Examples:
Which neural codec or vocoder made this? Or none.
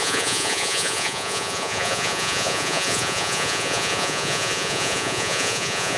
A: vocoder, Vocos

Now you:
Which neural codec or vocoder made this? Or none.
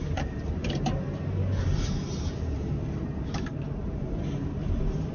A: vocoder, BigVGAN v2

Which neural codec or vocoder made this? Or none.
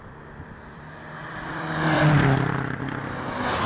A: vocoder, BigVGAN v2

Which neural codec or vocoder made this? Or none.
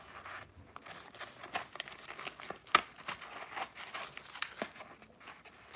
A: none